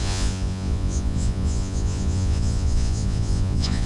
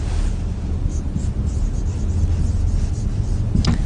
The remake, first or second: first